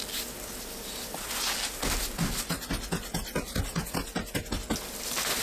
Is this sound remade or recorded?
recorded